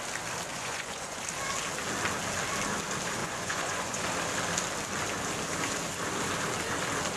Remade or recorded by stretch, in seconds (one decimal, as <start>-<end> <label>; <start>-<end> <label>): 0.0-0.5 recorded; 0.5-1.2 remade; 1.2-3.2 recorded; 3.2-4.1 remade; 4.1-7.2 recorded